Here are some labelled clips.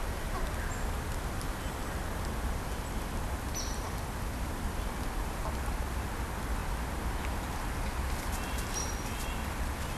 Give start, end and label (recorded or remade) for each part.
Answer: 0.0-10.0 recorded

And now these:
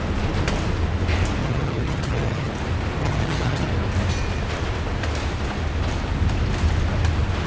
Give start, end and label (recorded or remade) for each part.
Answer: 0.0-1.4 recorded; 1.4-2.5 remade; 2.5-3.0 recorded; 3.0-3.7 remade; 3.7-7.5 recorded

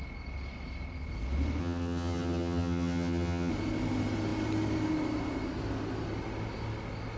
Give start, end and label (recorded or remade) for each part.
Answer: 0.0-1.6 recorded; 1.6-3.5 remade; 3.5-7.2 recorded